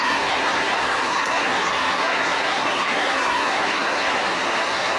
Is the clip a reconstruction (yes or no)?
yes